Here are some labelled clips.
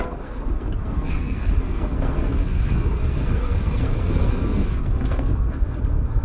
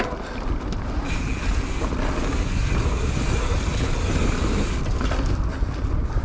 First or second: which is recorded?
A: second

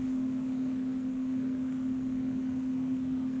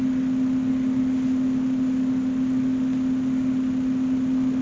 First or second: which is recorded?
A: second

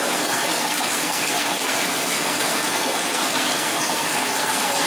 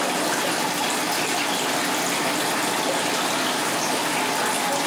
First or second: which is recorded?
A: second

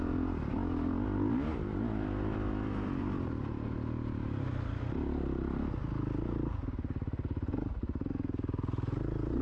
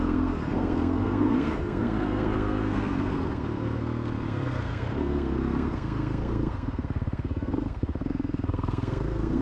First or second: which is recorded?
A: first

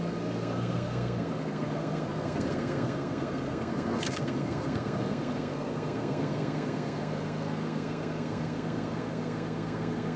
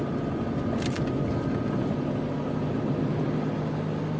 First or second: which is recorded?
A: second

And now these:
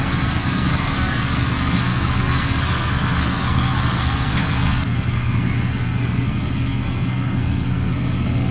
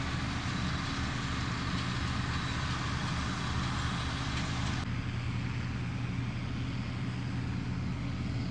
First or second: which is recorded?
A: second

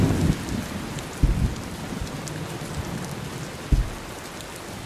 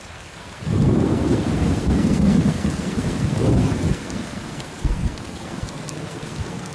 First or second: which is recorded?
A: first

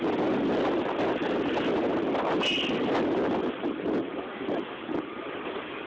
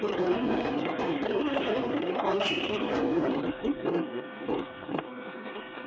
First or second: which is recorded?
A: first